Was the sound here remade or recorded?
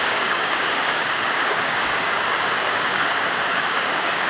remade